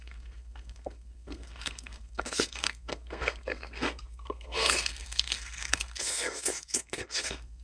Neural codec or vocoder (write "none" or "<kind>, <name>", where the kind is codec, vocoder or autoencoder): codec, SNAC